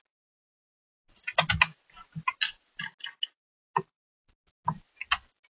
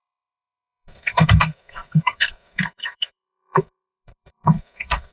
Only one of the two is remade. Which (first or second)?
second